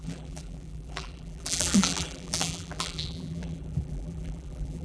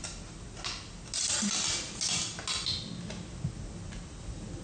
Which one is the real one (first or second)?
second